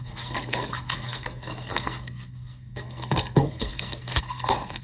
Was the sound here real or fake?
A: fake